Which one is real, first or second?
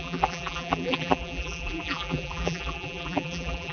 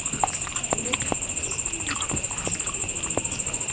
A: second